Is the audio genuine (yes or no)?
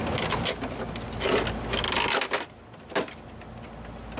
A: yes